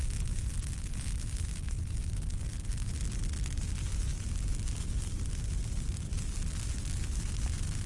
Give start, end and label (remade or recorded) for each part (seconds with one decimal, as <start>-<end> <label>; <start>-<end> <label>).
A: 0.0-7.9 recorded